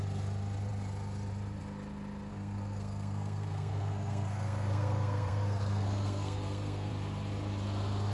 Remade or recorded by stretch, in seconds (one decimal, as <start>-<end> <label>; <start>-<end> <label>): 0.0-2.3 recorded; 2.3-6.9 remade; 6.9-8.1 recorded